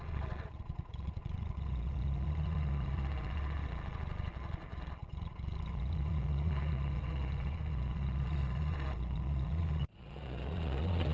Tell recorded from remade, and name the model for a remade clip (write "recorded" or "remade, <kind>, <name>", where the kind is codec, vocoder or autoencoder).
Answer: remade, vocoder, Vocos